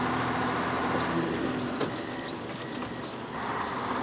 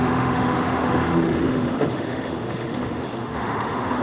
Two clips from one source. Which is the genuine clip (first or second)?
first